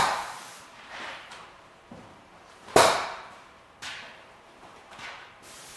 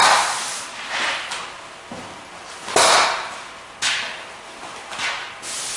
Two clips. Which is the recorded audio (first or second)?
second